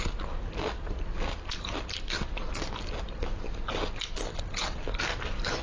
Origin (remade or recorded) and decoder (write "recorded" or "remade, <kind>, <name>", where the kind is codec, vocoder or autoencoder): recorded